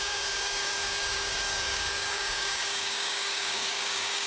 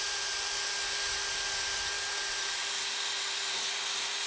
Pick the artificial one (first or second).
first